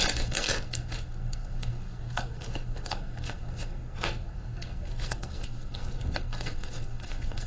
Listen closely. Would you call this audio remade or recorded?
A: remade